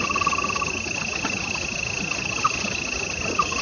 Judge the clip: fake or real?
real